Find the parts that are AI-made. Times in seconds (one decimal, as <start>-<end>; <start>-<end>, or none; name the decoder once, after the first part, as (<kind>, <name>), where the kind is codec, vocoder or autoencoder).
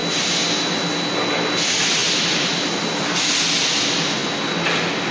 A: none